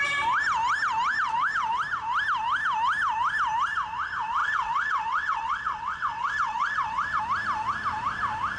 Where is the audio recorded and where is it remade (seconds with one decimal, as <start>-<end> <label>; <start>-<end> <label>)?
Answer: 0.0-4.4 recorded; 4.4-7.2 remade; 7.2-8.6 recorded